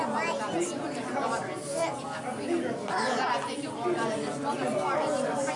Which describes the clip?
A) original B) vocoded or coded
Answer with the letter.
A